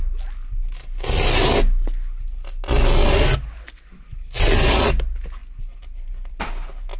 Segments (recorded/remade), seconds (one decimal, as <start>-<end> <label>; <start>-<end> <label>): 0.0-7.0 recorded